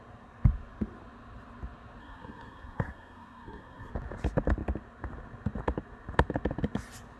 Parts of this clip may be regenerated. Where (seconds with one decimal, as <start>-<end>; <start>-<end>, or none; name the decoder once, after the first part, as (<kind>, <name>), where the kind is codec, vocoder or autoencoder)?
2.0-3.9 (codec, SNAC)